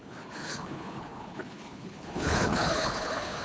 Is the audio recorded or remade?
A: remade